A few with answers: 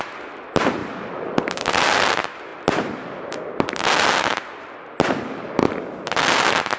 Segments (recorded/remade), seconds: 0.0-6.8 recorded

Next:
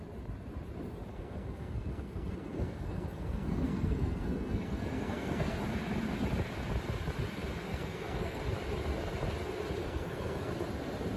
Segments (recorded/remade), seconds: 0.0-1.1 recorded; 1.1-5.6 remade; 5.6-7.7 recorded; 7.7-8.4 remade; 8.4-9.8 recorded; 9.8-10.5 remade; 10.5-11.2 recorded

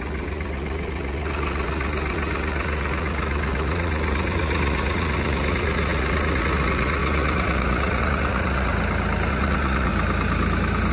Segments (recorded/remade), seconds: 0.0-8.7 remade; 8.7-9.3 recorded; 9.3-9.9 remade; 9.9-10.9 recorded